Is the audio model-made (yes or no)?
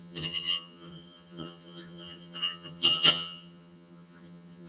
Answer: yes